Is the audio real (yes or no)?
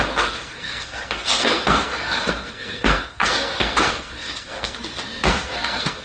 no